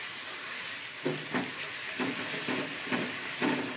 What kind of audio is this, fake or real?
real